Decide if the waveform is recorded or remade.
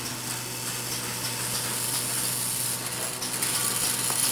recorded